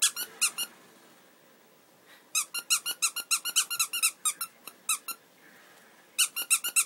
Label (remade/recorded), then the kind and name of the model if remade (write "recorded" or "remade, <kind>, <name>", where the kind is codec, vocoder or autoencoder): recorded